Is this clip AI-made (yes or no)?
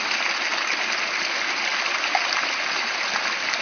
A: no